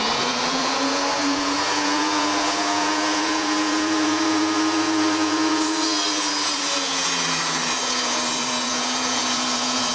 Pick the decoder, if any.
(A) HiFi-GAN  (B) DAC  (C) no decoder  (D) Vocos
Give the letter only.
D